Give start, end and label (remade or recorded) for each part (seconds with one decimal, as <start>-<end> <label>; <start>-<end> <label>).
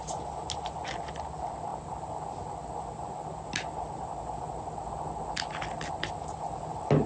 0.0-7.1 recorded